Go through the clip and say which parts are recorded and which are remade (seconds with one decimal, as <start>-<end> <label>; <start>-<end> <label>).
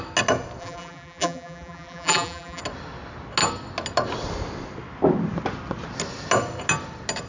0.0-0.6 recorded; 0.6-2.6 remade; 2.6-7.3 recorded